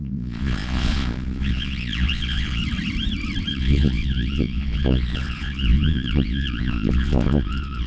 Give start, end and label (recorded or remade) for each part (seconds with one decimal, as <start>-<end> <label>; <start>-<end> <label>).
0.0-2.6 remade; 2.6-3.5 recorded; 3.5-7.9 remade